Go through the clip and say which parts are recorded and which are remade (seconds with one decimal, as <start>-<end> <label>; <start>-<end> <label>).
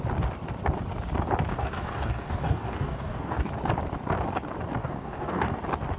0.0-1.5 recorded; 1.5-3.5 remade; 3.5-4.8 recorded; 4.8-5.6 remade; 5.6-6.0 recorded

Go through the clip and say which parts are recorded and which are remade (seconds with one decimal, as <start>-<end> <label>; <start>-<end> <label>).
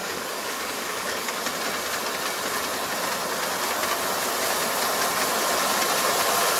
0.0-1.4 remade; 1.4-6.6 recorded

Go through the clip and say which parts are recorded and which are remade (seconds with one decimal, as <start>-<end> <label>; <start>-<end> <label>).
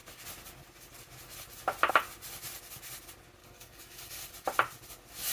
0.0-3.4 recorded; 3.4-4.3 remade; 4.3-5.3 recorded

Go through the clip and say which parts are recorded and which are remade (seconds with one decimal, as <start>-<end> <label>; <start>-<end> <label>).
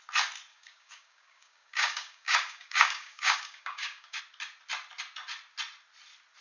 0.0-0.5 recorded; 0.5-4.2 remade; 4.2-6.4 recorded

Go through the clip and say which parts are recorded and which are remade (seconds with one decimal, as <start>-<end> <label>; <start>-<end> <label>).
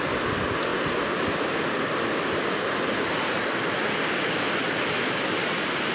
0.0-5.9 recorded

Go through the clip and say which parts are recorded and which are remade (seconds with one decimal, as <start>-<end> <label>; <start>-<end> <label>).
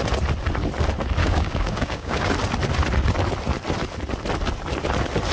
0.0-1.2 recorded; 1.2-2.3 remade; 2.3-5.3 recorded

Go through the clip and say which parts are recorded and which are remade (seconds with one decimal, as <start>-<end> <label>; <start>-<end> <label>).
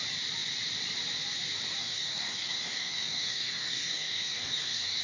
0.0-1.8 recorded; 1.8-5.0 remade